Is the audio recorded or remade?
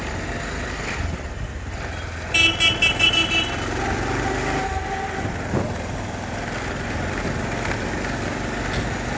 recorded